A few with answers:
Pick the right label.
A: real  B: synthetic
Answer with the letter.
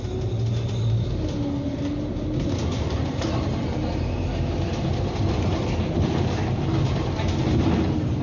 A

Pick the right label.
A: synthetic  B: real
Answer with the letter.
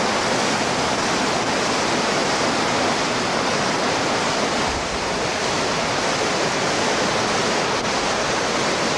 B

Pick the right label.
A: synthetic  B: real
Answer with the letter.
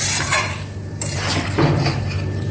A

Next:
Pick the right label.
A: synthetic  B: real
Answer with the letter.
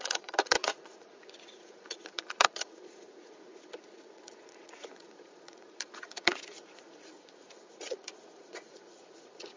A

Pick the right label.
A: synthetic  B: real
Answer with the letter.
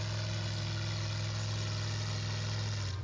B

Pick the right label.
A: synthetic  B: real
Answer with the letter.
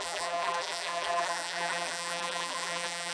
A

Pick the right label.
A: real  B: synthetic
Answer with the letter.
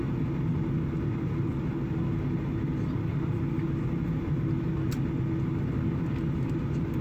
A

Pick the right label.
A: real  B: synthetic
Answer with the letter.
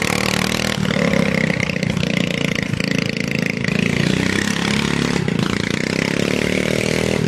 B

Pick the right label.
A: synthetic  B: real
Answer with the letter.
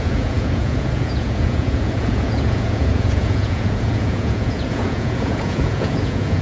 A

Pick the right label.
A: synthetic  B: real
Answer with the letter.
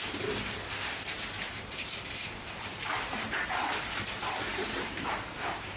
A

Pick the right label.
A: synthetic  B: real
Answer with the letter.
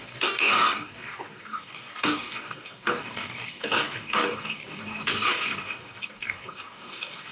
A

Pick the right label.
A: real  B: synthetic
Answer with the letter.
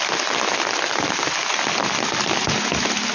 A